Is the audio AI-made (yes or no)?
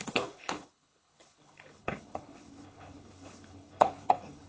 yes